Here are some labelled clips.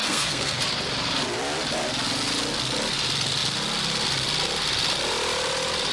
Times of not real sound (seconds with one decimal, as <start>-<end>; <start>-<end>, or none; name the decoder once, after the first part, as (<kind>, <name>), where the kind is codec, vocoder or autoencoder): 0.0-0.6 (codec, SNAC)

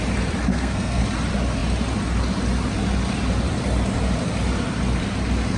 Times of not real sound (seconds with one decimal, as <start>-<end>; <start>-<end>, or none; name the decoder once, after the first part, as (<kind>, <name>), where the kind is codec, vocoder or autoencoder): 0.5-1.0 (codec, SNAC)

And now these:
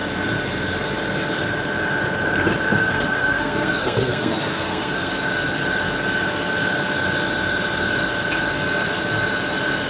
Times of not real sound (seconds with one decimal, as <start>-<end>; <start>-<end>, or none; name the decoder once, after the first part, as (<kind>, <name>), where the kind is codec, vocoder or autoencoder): 2.7-5.1 (codec, SNAC)

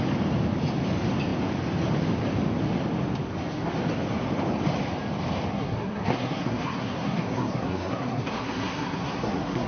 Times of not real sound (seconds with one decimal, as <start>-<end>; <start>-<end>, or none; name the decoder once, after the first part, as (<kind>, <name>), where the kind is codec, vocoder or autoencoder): 5.5-9.7 (codec, SNAC)

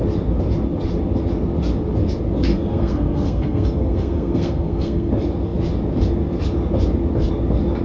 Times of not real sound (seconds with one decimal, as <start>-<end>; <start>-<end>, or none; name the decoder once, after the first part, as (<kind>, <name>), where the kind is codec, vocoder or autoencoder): 2.5-5.1 (codec, SNAC)

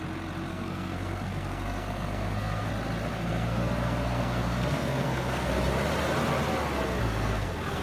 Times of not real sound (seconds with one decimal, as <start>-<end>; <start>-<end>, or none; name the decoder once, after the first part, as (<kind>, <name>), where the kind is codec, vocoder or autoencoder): 0.5-2.7 (codec, SNAC); 3.1-5.5; 7.0-7.8

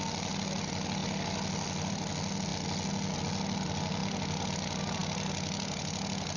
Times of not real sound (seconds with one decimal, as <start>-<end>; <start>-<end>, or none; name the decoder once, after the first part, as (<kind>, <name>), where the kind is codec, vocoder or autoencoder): none